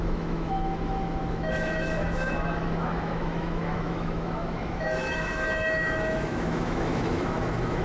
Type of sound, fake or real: fake